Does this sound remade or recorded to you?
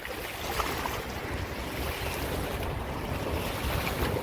recorded